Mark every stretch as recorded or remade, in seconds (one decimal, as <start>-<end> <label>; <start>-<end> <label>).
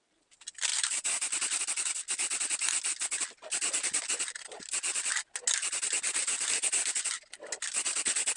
0.0-0.7 recorded; 0.7-1.6 remade; 1.6-8.4 recorded